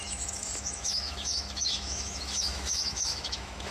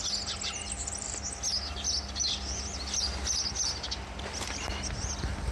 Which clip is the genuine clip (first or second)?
second